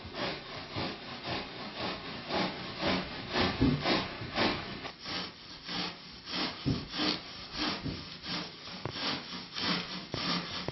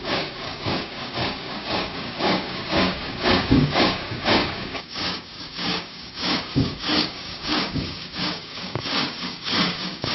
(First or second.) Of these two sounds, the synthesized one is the second